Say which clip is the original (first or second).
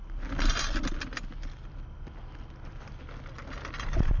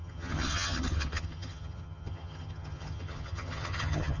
first